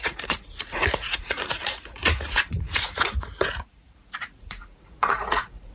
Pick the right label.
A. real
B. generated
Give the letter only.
B